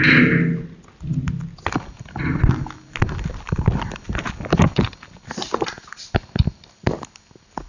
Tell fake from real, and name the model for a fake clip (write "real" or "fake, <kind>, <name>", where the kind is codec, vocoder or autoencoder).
real